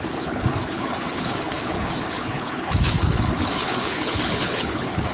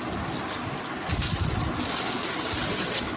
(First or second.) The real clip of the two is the second